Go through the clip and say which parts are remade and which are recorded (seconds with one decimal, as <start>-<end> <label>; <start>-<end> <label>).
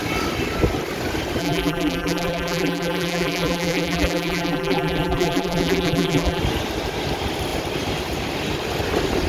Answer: 0.0-1.4 recorded; 1.4-6.4 remade; 6.4-9.3 recorded